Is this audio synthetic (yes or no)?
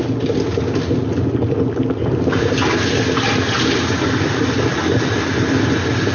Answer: no